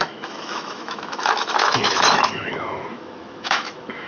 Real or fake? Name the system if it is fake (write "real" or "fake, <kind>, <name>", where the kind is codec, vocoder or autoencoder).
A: fake, autoencoder, DAC-VAE